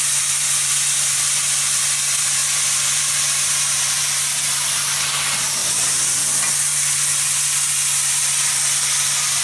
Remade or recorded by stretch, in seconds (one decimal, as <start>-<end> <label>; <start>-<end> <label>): 0.0-5.6 recorded; 5.6-6.2 remade; 6.2-9.4 recorded